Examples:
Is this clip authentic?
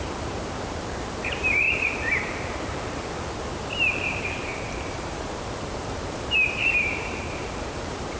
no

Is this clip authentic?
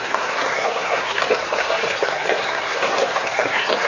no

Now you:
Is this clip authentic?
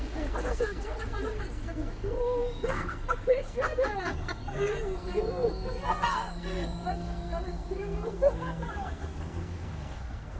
no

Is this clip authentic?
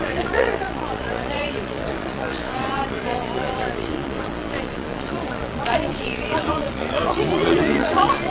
no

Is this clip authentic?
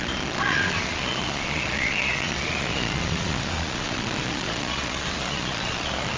no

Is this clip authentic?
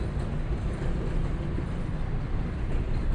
yes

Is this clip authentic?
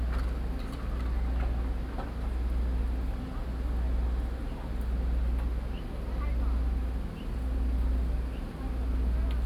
yes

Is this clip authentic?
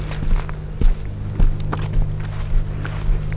yes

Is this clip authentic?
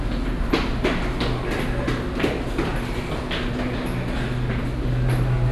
yes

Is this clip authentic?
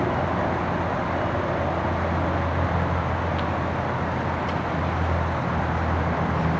yes